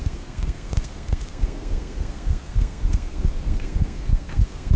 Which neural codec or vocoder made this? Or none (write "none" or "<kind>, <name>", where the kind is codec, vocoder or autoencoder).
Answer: codec, SNAC